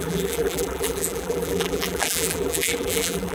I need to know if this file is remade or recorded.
remade